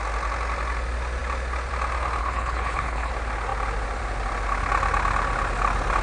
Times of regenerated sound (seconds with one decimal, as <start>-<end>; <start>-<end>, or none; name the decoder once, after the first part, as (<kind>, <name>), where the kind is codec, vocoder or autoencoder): 2.2-3.1 (codec, HILCodec)